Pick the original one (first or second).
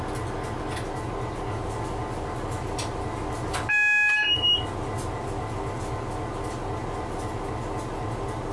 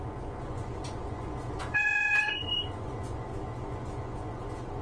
first